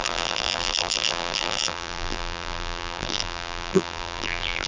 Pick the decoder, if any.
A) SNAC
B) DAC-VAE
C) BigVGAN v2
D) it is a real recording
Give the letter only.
C